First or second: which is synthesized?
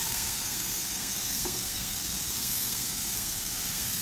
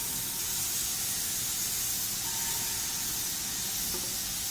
first